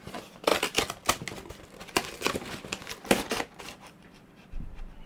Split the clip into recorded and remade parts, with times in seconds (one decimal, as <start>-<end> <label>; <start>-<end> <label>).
0.0-0.5 remade; 0.5-3.6 recorded; 3.6-5.1 remade